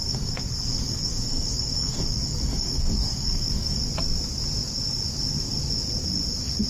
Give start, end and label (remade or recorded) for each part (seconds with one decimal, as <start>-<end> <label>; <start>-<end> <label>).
0.0-3.8 remade; 3.8-6.7 recorded